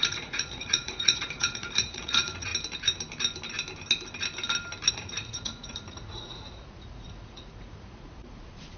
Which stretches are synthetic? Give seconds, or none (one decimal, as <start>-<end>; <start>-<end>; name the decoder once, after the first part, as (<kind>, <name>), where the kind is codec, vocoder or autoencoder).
0.0-2.5 (vocoder, Vocos); 4.9-8.8